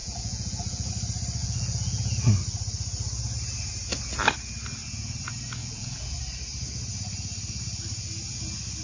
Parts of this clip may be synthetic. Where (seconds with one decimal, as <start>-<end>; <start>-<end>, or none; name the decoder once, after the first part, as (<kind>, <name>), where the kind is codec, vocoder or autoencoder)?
0.0-0.9 (vocoder, Vocos); 1.4-2.3; 5.6-6.1